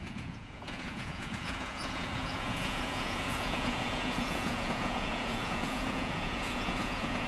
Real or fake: fake